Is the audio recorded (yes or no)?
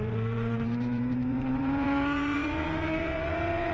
no